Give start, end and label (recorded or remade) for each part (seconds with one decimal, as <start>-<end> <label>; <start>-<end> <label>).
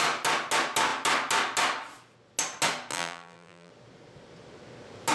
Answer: 0.0-2.9 recorded; 2.9-3.7 remade; 3.7-5.1 recorded